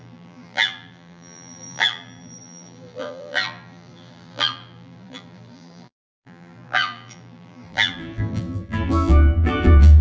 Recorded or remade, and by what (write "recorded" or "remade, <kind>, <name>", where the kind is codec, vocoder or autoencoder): remade, vocoder, BigVGAN v2